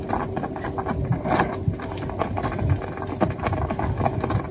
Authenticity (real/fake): real